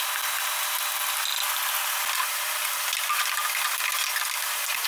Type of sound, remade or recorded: recorded